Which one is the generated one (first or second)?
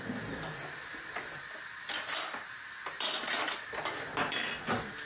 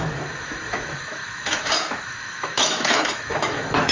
second